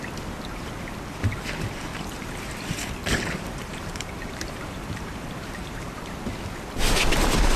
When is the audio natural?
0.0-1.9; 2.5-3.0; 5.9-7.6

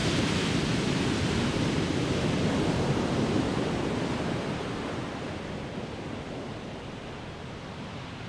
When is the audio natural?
0.0-8.3

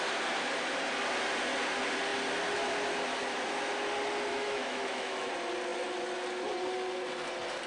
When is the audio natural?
0.0-4.3; 5.3-7.7

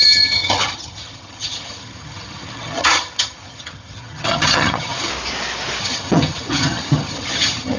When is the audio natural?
5.1-5.8

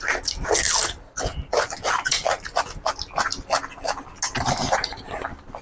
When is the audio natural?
0.0-5.6